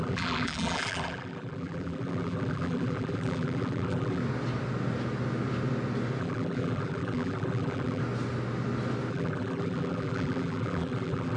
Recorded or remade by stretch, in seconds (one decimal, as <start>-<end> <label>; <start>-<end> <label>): 0.0-4.2 remade; 4.2-6.2 recorded; 6.2-8.0 remade; 8.0-9.1 recorded; 9.1-11.4 remade